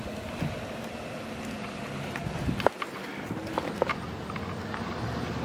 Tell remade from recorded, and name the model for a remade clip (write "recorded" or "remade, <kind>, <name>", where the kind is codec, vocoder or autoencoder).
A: recorded